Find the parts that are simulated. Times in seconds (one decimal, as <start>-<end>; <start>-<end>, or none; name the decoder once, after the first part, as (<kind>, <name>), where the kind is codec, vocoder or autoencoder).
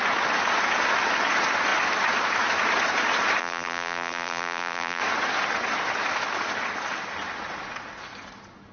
3.4-5.0 (vocoder, BigVGAN v2)